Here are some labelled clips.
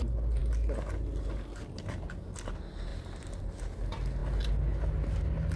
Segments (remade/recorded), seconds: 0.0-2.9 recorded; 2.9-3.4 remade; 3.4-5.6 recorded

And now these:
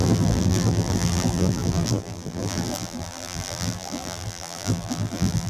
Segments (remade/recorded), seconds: 0.0-5.5 remade

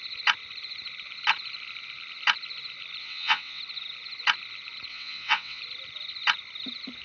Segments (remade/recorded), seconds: 0.0-3.0 recorded; 3.0-3.6 remade; 3.6-4.9 recorded; 4.9-5.6 remade; 5.6-7.0 recorded